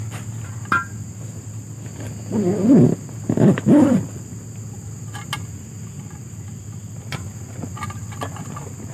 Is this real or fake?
real